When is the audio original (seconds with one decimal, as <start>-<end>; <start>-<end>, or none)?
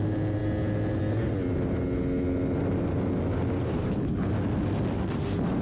0.0-3.7; 4.3-5.6